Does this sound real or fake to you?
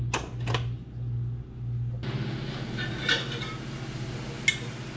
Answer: real